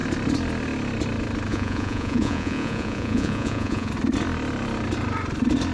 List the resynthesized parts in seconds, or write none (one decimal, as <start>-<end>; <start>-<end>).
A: 1.5-3.9